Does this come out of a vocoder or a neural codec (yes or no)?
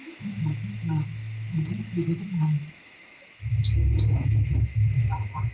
yes